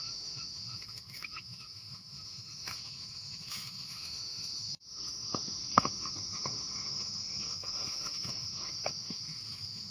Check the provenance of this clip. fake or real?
fake